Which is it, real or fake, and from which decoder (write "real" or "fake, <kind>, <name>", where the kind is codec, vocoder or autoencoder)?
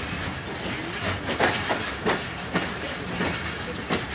real